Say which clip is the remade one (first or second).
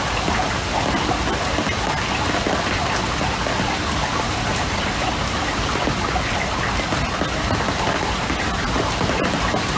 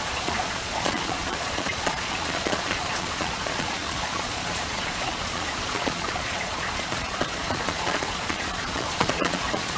second